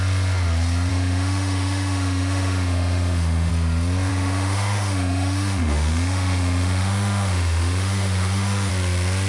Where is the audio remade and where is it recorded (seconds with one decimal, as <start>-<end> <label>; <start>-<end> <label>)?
0.0-0.9 recorded; 0.9-3.5 remade; 3.5-4.1 recorded; 4.1-8.7 remade; 8.7-9.3 recorded